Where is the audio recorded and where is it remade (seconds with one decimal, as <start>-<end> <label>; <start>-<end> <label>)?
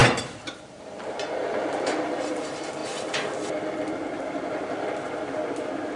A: 0.0-2.8 remade; 2.8-3.9 recorded; 3.9-5.4 remade; 5.4-6.0 recorded